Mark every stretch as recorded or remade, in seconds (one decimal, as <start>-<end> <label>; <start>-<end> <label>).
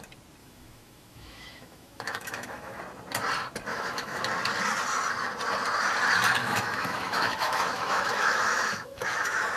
0.0-0.4 recorded; 0.4-2.8 remade; 2.8-3.7 recorded; 3.7-4.2 remade; 4.2-6.4 recorded; 6.4-9.6 remade